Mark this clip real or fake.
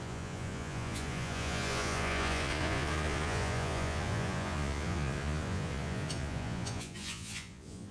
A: fake